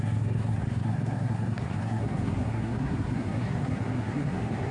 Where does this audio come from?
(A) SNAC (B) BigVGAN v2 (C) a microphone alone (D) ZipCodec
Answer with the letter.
A